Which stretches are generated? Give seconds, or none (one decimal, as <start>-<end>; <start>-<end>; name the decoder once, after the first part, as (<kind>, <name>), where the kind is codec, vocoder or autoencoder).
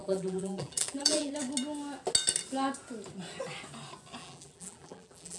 0.0-1.3 (vocoder, BigVGAN v2); 4.2-5.4